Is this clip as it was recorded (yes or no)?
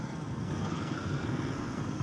no